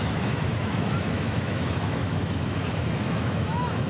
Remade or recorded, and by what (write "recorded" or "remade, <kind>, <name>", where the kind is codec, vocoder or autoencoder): remade, autoencoder, DAC-VAE